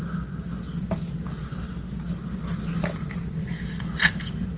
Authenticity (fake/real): real